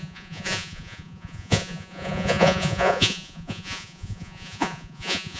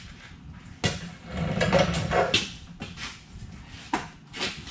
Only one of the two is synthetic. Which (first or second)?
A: first